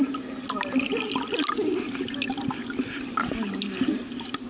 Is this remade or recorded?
recorded